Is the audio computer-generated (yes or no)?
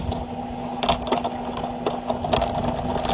no